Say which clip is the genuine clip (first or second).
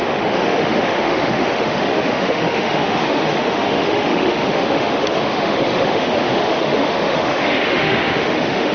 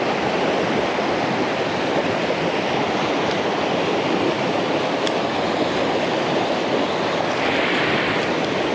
second